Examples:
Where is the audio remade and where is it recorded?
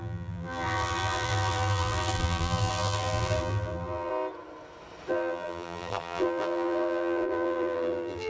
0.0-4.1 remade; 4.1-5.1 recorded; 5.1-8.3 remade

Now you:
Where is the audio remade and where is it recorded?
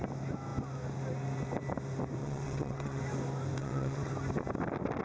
0.0-2.2 recorded; 2.2-3.0 remade; 3.0-3.6 recorded; 3.6-4.1 remade; 4.1-5.0 recorded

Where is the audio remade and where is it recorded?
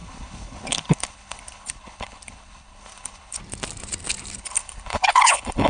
0.0-3.4 remade; 3.4-4.4 recorded; 4.4-5.7 remade